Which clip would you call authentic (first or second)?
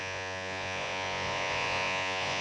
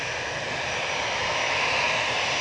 second